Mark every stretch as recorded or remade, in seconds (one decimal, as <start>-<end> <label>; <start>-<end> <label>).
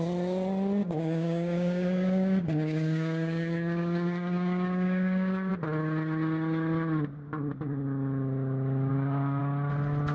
0.0-0.8 recorded; 0.8-5.5 remade; 5.5-8.9 recorded; 8.9-9.4 remade; 9.4-10.1 recorded